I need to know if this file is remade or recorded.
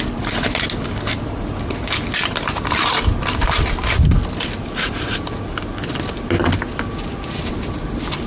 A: recorded